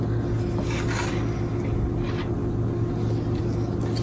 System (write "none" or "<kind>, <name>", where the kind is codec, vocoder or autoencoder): none